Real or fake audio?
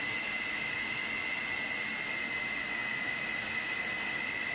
real